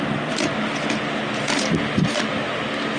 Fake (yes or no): no